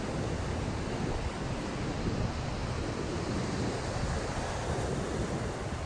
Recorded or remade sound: recorded